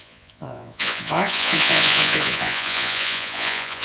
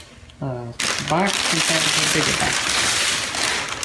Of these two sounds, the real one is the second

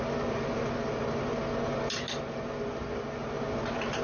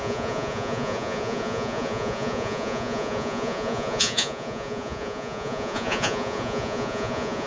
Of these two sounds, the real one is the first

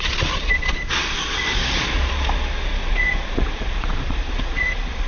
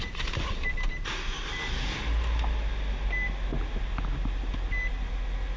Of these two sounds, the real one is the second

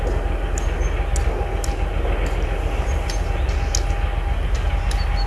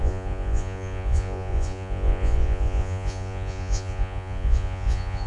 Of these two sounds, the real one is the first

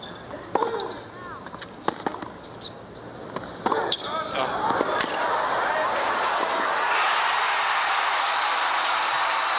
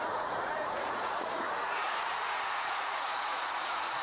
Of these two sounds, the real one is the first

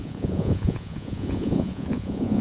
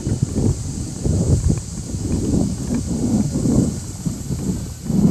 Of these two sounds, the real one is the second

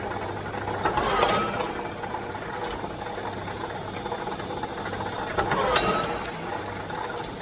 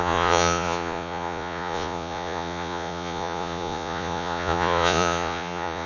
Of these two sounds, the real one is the first